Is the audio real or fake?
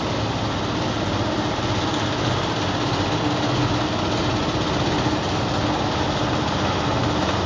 real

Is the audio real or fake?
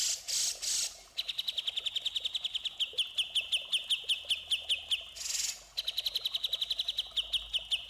real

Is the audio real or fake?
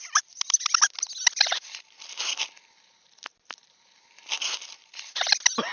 real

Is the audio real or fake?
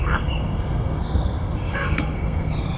fake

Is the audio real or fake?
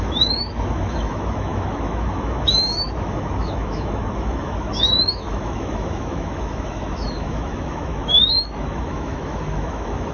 fake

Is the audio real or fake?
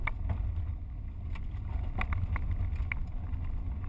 real